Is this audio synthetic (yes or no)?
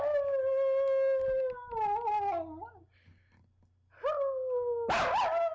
no